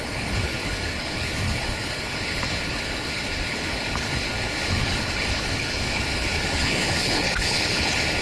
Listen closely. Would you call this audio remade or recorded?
remade